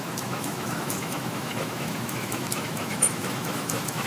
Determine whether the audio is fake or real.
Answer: fake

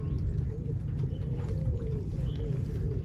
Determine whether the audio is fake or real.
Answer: real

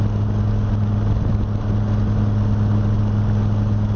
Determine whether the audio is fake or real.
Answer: real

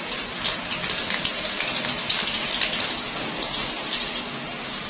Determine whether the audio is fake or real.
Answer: real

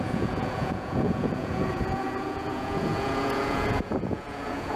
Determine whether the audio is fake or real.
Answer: fake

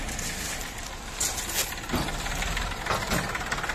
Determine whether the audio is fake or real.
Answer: real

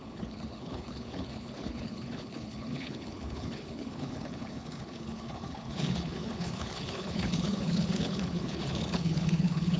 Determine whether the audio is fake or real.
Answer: fake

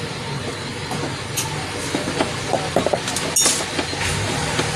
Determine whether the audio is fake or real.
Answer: real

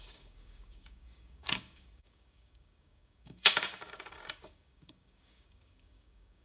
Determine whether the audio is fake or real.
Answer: fake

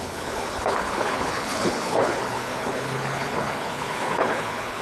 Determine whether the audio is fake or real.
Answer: fake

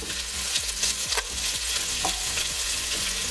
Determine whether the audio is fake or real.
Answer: fake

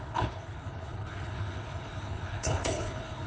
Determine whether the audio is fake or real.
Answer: fake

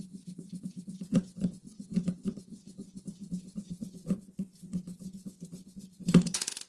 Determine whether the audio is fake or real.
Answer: fake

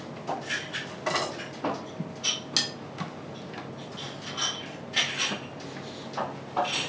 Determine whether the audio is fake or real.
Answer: real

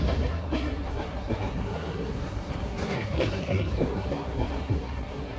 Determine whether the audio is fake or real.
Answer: fake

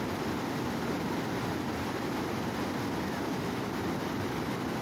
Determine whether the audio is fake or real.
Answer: real